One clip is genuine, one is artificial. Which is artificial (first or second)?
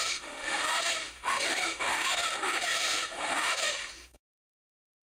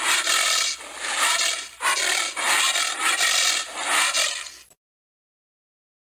first